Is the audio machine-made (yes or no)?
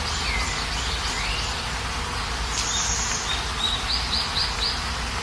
no